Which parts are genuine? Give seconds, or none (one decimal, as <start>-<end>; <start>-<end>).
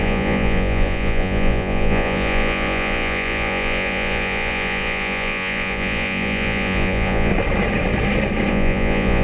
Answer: 7.3-8.5